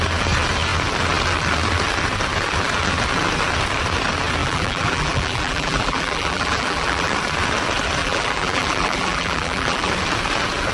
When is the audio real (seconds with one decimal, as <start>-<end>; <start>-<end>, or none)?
0.0-4.4; 7.1-8.0; 9.9-10.7